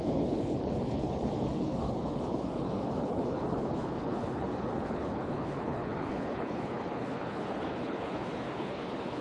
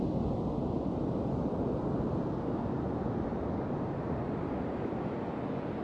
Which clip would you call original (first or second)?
second